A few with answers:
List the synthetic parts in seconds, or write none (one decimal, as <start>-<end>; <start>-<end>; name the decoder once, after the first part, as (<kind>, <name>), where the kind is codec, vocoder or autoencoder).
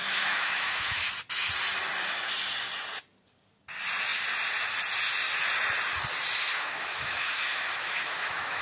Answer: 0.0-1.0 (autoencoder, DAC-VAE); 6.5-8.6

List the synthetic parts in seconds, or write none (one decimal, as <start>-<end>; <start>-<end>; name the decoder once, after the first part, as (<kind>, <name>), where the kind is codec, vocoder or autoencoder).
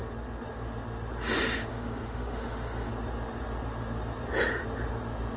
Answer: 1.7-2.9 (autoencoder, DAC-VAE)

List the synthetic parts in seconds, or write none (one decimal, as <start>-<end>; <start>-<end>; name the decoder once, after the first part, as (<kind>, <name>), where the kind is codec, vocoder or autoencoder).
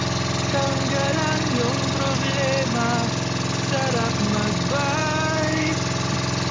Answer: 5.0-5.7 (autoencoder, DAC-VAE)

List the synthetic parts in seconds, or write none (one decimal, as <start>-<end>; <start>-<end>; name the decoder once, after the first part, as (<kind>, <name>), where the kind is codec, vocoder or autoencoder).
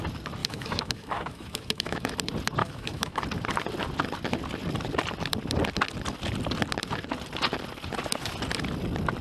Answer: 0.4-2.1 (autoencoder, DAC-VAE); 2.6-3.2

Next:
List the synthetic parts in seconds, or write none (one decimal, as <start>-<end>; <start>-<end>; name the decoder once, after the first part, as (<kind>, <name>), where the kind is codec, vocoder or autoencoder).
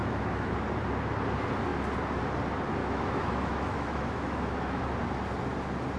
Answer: 0.0-0.5 (autoencoder, DAC-VAE); 2.8-4.8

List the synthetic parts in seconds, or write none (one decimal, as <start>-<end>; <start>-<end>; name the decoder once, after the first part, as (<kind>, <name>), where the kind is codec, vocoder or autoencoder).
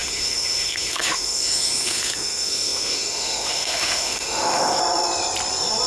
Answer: 0.0-4.8 (autoencoder, DAC-VAE)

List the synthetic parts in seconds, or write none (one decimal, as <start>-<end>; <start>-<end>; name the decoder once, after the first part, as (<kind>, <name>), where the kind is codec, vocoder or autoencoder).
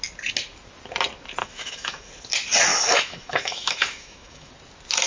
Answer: 1.4-2.1 (autoencoder, DAC-VAE); 2.7-4.5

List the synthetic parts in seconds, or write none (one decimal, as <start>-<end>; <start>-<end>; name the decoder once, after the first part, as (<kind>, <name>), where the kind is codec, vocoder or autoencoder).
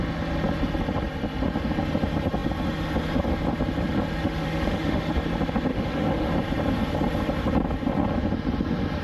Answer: 4.2-5.1 (autoencoder, DAC-VAE); 5.7-6.3